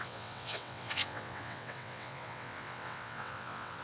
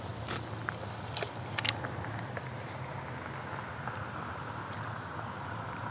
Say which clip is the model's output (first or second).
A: first